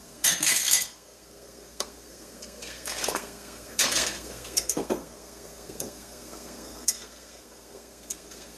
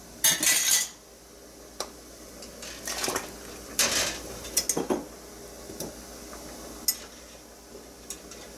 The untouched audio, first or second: second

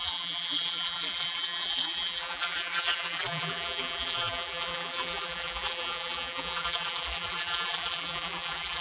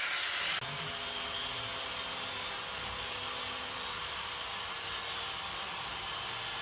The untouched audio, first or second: second